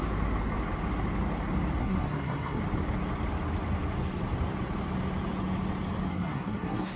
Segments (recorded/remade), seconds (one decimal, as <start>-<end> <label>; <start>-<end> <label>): 0.0-1.8 recorded; 1.8-2.6 remade; 2.6-6.1 recorded; 6.1-7.0 remade